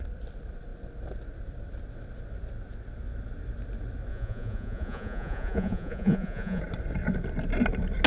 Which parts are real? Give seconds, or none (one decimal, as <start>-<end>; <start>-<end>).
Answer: 0.0-4.1; 6.6-8.1